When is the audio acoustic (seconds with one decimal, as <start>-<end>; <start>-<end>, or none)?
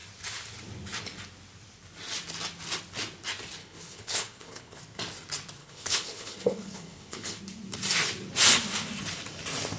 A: 0.0-3.6; 4.8-5.6; 7.4-9.8